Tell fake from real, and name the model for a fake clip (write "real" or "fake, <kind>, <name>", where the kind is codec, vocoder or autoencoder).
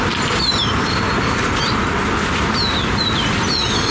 real